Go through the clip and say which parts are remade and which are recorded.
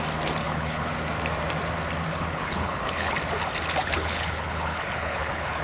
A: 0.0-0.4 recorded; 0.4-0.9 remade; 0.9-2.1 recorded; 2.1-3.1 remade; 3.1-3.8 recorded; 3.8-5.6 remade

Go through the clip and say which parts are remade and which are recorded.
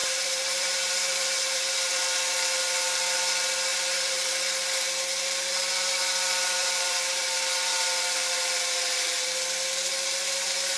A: 0.0-1.9 remade; 1.9-3.7 recorded; 3.7-4.3 remade; 4.3-6.6 recorded; 6.6-7.2 remade; 7.2-10.8 recorded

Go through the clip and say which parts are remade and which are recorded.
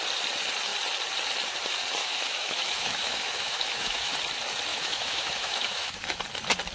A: 0.0-2.0 recorded; 2.0-4.1 remade; 4.1-4.7 recorded; 4.7-6.2 remade; 6.2-6.7 recorded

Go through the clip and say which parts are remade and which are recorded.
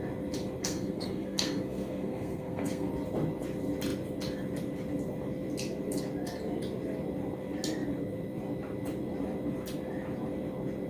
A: 0.0-0.6 recorded; 0.6-2.9 remade; 2.9-10.9 recorded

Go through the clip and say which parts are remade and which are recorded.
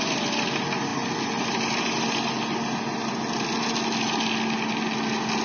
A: 0.0-5.4 recorded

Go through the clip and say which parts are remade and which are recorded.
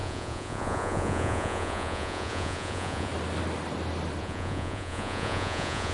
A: 0.0-3.1 remade; 3.1-4.2 recorded; 4.2-5.9 remade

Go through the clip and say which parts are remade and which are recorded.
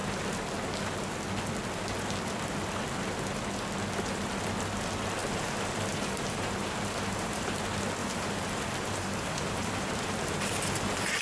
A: 0.0-5.2 recorded; 5.2-7.6 remade; 7.6-8.0 recorded; 8.0-10.5 remade; 10.5-11.2 recorded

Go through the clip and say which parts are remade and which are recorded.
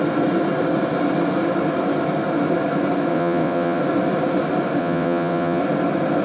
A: 0.0-3.1 recorded; 3.1-3.8 remade; 3.8-4.8 recorded; 4.8-5.6 remade; 5.6-6.2 recorded